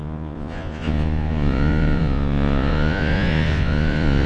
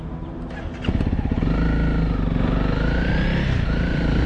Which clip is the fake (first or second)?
first